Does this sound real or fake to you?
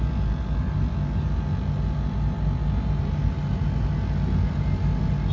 real